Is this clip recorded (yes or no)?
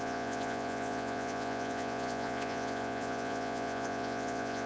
no